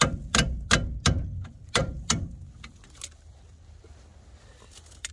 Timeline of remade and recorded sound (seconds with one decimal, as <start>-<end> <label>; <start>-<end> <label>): 0.0-5.1 recorded